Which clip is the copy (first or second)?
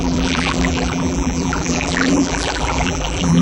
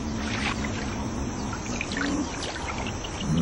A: first